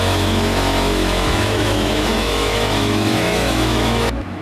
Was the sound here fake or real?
fake